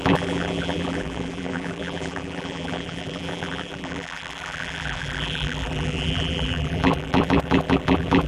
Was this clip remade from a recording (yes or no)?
yes